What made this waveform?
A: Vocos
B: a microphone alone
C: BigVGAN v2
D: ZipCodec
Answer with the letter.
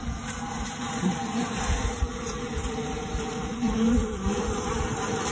C